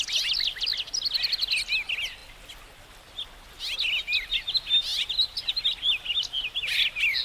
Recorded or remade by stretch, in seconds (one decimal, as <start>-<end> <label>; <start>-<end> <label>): 0.0-4.9 recorded; 4.9-5.5 remade; 5.5-7.2 recorded